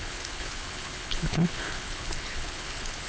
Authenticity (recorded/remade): remade